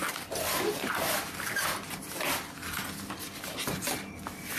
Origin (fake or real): real